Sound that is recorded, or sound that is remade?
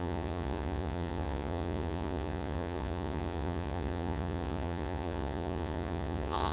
remade